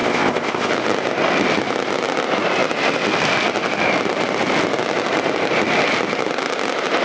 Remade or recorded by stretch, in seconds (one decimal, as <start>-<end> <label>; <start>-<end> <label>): 0.0-0.7 remade; 0.7-7.0 recorded